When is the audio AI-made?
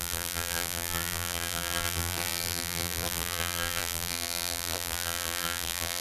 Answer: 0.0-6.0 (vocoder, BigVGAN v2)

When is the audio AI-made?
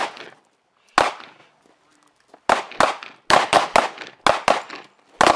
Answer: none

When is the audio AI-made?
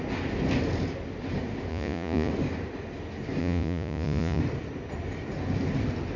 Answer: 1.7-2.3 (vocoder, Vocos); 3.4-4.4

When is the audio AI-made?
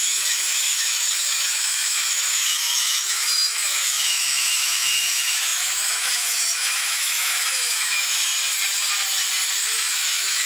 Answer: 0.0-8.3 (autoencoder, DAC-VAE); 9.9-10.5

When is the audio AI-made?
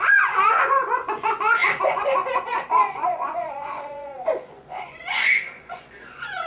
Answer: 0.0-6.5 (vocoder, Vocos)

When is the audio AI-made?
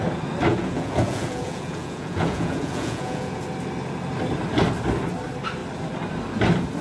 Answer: 0.5-3.4 (vocoder, Vocos)